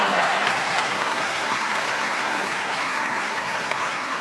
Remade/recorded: remade